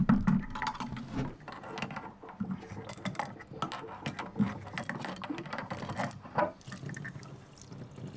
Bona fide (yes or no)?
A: yes